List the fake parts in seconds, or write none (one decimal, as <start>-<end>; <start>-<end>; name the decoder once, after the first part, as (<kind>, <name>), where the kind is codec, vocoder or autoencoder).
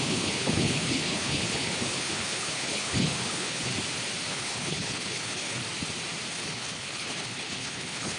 0.0-3.7 (codec, HILCodec); 4.3-5.6; 6.3-8.2